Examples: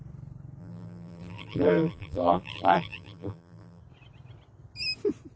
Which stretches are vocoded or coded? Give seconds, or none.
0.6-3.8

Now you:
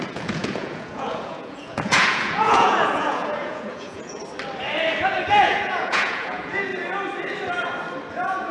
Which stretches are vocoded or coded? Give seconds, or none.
0.0-4.2; 5.3-6.7; 8.1-8.5